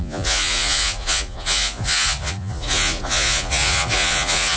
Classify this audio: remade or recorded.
remade